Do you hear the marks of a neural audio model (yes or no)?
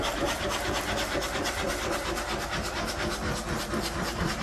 yes